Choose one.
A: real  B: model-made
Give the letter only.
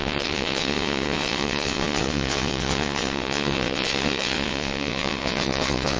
B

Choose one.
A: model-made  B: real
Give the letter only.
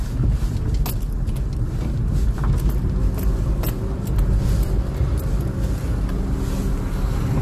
B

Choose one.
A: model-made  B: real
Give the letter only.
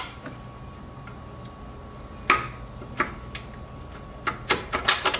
B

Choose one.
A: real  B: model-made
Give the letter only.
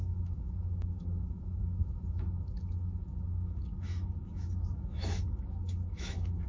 B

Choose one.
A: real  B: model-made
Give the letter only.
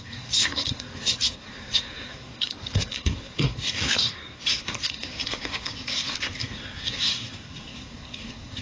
B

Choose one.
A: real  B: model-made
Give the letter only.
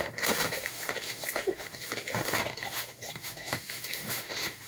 B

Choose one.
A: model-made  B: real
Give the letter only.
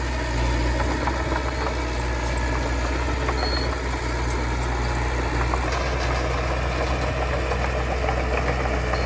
B